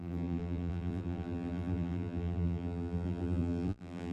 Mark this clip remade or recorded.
remade